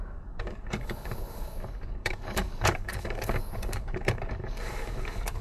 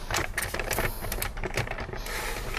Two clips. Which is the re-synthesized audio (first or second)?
first